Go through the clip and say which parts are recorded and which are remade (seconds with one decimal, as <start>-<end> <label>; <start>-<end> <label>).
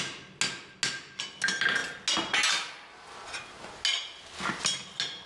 0.0-5.3 recorded